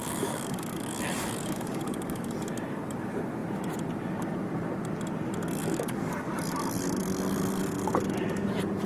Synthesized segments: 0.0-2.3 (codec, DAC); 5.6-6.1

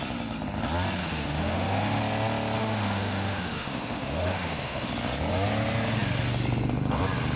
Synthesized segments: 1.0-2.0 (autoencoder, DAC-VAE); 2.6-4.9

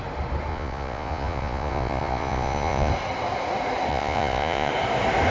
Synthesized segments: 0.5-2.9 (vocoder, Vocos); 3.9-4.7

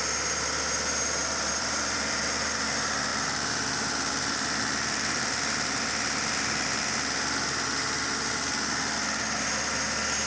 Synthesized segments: 1.2-2.5 (vocoder, BigVGAN v2); 3.1-5.9

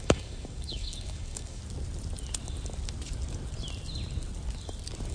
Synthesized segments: 0.0-1.6 (codec, DAC)

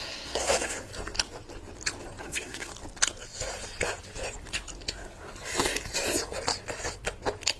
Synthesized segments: 0.0-0.9 (codec, SNAC); 2.2-2.7

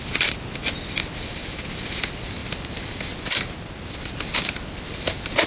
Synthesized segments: none